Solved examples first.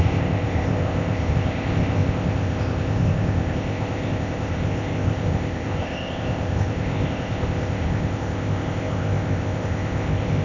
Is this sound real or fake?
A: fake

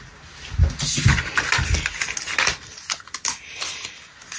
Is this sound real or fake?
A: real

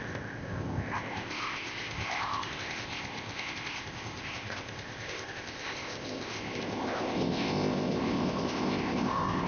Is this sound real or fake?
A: fake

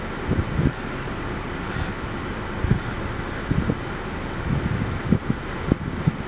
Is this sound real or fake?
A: real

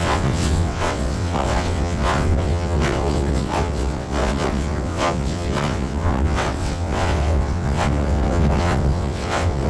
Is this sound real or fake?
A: fake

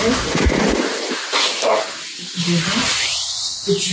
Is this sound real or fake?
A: real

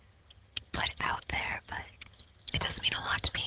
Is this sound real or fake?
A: fake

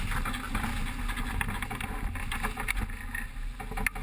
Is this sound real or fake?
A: real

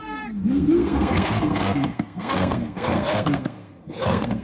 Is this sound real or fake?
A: fake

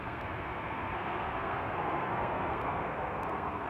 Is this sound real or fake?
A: fake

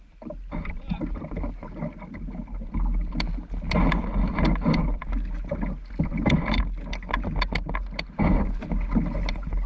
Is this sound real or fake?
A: real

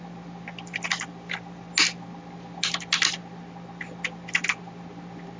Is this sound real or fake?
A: real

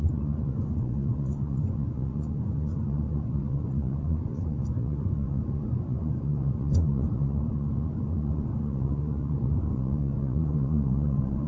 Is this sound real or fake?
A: fake